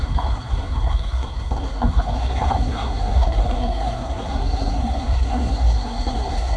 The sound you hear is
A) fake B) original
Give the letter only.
A